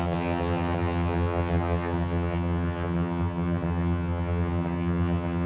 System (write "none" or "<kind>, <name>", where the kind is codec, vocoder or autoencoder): vocoder, HiFi-GAN